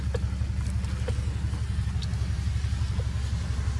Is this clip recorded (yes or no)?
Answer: yes